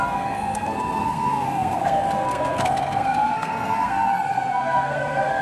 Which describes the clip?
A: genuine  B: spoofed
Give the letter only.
B